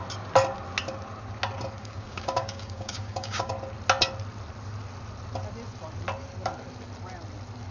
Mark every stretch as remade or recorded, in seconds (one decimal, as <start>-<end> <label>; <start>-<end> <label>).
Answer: 0.0-1.8 recorded; 1.8-3.5 remade; 3.5-7.7 recorded

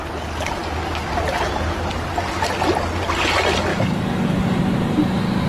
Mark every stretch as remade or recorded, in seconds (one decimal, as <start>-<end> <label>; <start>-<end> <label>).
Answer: 0.0-3.7 recorded; 3.7-4.6 remade; 4.6-5.5 recorded

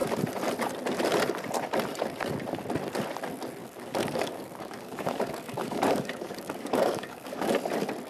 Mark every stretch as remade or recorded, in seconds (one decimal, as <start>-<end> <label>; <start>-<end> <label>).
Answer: 0.0-3.6 recorded; 3.6-7.5 remade; 7.5-8.1 recorded

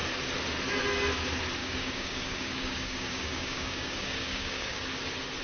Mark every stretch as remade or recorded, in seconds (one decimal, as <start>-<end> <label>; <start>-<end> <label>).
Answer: 0.0-1.6 recorded; 1.6-4.8 remade; 4.8-5.4 recorded

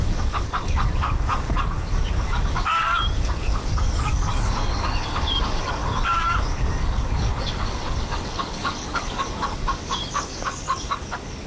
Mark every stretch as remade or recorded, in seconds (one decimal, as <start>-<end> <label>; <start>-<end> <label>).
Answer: 0.0-11.5 remade